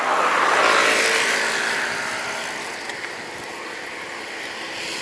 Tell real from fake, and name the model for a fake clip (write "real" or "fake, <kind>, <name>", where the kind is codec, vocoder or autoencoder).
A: real